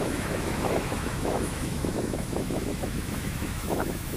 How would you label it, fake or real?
fake